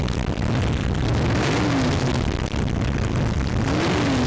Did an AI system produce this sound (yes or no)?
no